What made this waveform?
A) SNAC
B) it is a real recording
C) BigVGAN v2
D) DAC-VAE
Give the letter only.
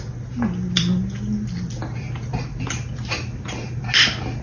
B